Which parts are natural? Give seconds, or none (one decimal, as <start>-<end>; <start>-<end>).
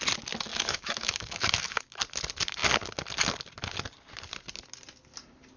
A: 0.0-0.5; 1.8-5.6